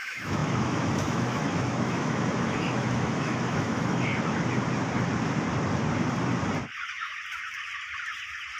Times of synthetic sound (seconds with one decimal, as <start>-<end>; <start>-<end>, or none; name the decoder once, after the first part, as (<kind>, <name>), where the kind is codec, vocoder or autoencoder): 0.0-4.1 (autoencoder, DAC-VAE)